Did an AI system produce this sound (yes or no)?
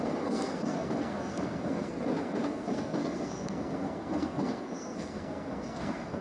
yes